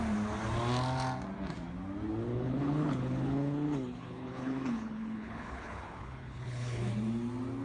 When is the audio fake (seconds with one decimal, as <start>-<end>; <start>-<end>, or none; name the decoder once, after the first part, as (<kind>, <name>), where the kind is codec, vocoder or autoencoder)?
2.3-6.9 (codec, HILCodec)